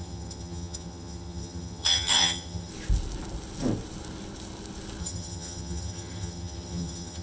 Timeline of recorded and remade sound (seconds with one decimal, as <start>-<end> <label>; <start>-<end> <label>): 0.0-2.7 remade; 2.7-5.0 recorded; 5.0-7.2 remade